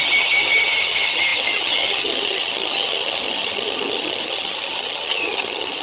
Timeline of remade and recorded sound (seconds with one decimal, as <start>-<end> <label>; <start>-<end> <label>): 0.0-5.8 remade